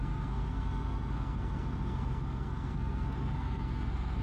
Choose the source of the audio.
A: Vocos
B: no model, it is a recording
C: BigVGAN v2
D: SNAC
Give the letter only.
D